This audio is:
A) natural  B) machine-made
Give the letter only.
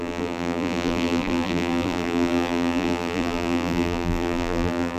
B